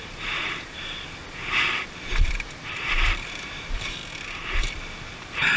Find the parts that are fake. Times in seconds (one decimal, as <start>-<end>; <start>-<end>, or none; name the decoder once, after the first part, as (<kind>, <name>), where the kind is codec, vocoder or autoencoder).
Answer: 0.0-4.0 (vocoder, BigVGAN v2); 4.8-5.6